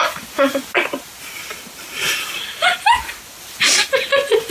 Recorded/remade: recorded